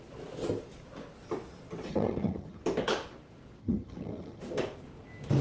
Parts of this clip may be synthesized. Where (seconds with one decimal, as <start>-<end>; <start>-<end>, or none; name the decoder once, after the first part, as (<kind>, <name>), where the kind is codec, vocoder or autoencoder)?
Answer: 1.9-2.6 (vocoder, HiFi-GAN); 3.6-4.4